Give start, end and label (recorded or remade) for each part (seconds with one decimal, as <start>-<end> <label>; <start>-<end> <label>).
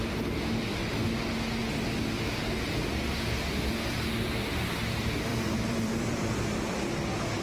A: 0.0-5.3 recorded; 5.3-7.0 remade; 7.0-7.4 recorded